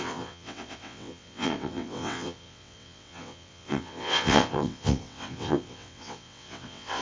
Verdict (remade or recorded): remade